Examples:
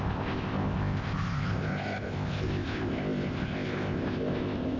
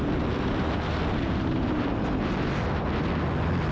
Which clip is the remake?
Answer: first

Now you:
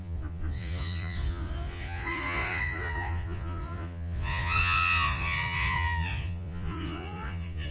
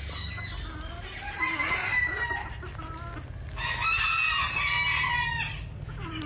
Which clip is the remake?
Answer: first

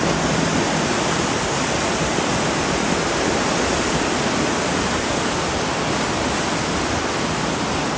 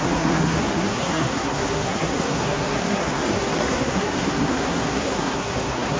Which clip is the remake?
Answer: second